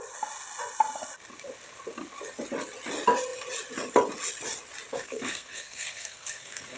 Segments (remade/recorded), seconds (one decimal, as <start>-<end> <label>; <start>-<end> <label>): 0.0-4.9 recorded; 4.9-6.8 remade